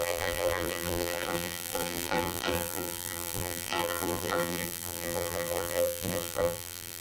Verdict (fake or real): fake